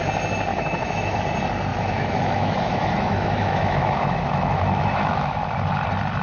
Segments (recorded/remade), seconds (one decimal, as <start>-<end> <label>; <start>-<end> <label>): 0.0-0.5 recorded; 0.5-1.2 remade; 1.2-1.7 recorded; 1.7-5.3 remade; 5.3-6.2 recorded